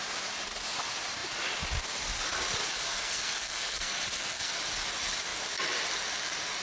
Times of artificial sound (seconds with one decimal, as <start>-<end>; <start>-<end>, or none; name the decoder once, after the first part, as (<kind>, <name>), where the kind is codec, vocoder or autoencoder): 2.7-4.6 (codec, SNAC)